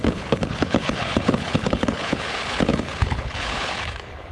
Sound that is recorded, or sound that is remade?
remade